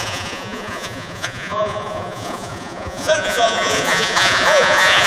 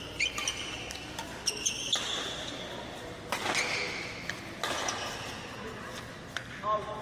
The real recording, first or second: second